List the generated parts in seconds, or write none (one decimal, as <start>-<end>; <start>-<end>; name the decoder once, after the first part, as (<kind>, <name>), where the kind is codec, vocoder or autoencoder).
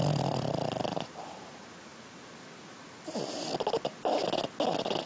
none